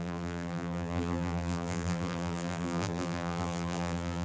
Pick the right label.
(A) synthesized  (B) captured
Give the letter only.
A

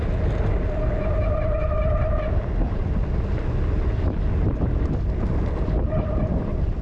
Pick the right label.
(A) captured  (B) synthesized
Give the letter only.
A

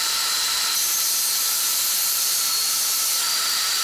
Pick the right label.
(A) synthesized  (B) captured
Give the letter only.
A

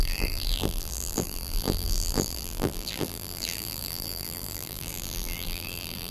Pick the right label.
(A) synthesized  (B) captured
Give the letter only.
A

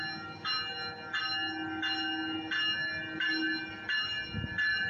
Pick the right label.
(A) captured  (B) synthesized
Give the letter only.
A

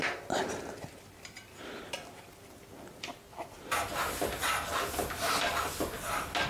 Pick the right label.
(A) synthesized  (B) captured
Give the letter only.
B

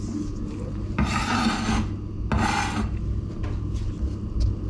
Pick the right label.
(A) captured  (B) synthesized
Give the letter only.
A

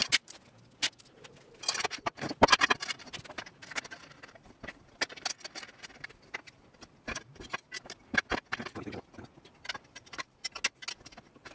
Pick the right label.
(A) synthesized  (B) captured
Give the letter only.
B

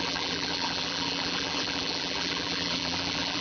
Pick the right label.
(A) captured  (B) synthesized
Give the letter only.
B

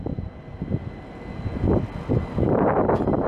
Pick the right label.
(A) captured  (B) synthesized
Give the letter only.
A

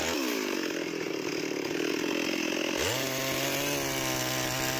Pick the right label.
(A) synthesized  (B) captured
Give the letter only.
B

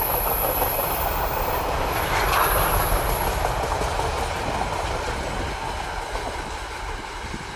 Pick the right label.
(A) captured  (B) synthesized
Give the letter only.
A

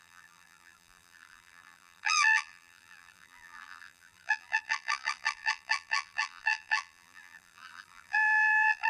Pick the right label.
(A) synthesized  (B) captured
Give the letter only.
A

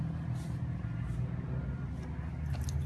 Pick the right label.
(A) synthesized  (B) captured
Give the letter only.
B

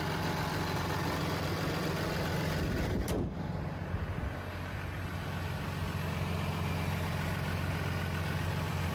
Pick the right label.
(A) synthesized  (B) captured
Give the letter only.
B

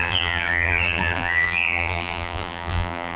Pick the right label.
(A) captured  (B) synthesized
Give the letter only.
B